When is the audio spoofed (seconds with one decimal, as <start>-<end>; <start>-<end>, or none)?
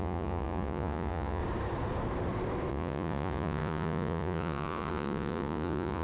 0.0-1.4; 2.7-6.0